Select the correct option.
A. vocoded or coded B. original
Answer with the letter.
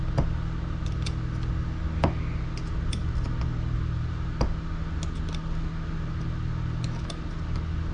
B